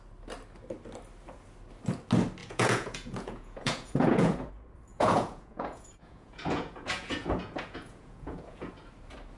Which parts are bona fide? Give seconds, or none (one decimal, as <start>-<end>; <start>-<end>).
0.0-2.4; 4.5-4.9; 8.7-9.4